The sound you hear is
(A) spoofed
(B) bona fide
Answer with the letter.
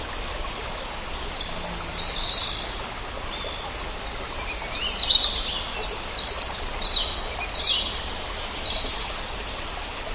B